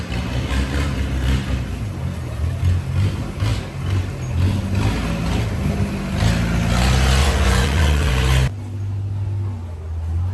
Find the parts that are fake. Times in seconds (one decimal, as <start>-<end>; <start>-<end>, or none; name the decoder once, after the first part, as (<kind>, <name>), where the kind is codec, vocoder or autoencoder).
7.2-8.1 (vocoder, Vocos)